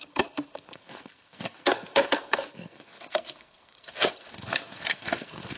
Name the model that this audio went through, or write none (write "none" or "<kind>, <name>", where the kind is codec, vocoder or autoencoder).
codec, SNAC